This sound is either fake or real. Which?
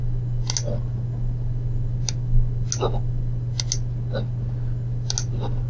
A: real